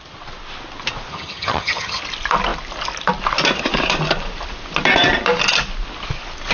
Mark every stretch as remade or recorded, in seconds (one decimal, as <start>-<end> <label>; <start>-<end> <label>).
0.0-1.1 recorded; 1.1-2.0 remade; 2.0-6.5 recorded